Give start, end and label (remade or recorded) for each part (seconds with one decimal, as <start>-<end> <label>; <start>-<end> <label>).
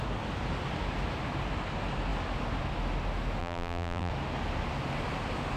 0.0-3.4 recorded; 3.4-4.1 remade; 4.1-5.6 recorded